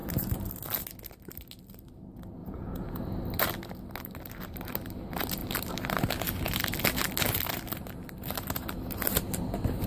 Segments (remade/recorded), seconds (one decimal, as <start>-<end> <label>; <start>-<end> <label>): 0.0-2.4 recorded; 2.4-3.0 remade; 3.0-9.9 recorded